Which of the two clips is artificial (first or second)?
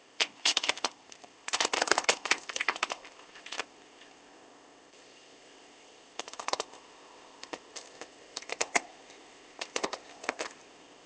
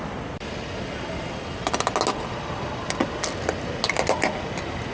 first